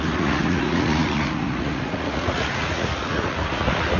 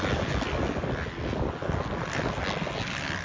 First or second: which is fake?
first